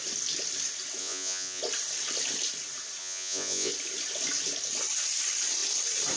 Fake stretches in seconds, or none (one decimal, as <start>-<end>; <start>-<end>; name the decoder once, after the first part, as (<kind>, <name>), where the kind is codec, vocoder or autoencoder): 1.0-1.6 (vocoder, Vocos); 3.0-3.7